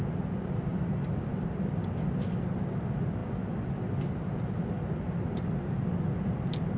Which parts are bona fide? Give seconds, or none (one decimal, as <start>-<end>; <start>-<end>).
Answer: 0.0-0.7; 1.6-6.8

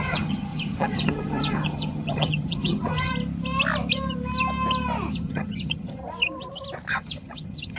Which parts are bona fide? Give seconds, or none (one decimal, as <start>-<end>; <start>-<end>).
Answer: 3.1-5.1; 6.0-6.9